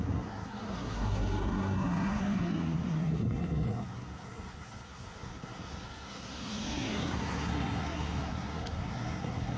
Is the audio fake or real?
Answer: fake